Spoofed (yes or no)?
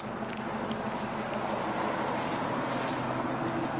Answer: no